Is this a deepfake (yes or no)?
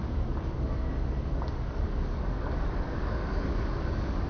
yes